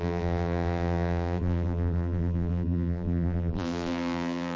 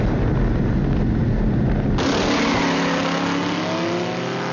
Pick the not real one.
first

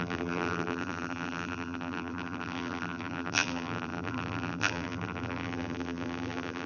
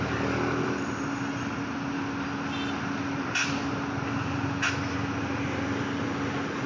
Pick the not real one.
first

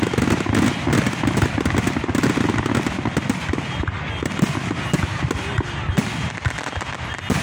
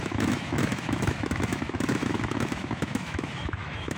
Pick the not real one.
second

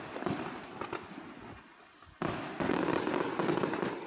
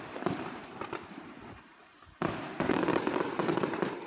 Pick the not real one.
second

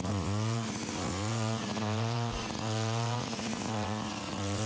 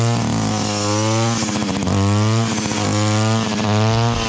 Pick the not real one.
first